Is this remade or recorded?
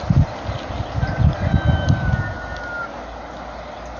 recorded